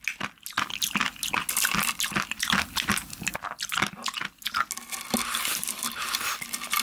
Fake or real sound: real